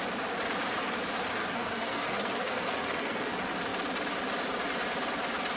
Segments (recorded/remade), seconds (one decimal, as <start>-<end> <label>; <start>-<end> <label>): 0.0-1.4 recorded; 1.4-3.3 remade; 3.3-5.6 recorded